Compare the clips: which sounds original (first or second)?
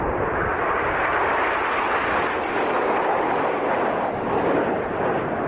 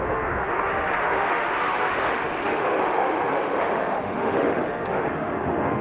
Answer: first